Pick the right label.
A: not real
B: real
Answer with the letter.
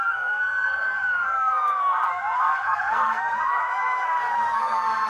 A